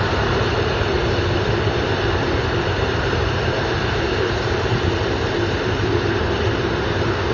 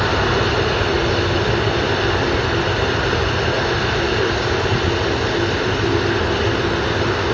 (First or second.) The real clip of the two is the second